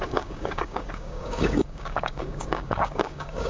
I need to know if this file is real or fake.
fake